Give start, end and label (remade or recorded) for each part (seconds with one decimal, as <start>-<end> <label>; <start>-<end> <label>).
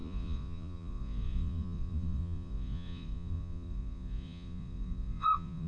0.0-5.7 remade